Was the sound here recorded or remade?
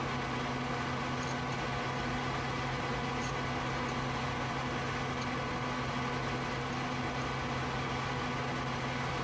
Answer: recorded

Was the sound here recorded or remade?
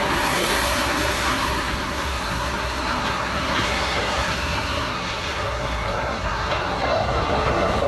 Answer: remade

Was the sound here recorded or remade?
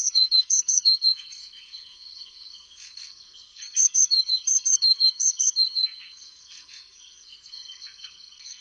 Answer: remade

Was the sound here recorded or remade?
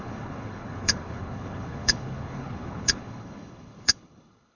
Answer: remade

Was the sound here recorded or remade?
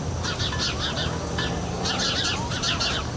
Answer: recorded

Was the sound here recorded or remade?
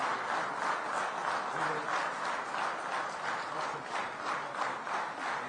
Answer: recorded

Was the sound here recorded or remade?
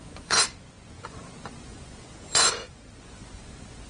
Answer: remade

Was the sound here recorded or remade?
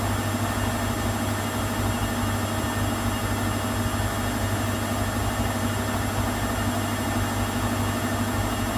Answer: recorded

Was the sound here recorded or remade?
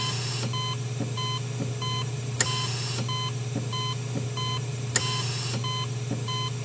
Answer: recorded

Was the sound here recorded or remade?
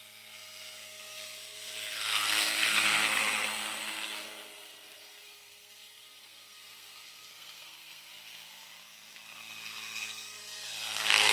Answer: remade